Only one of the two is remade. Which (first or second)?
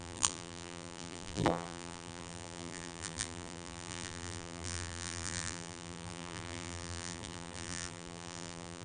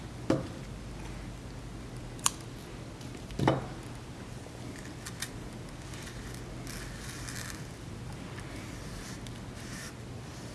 first